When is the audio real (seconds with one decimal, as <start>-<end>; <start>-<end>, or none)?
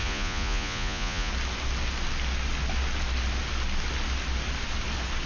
1.3-5.3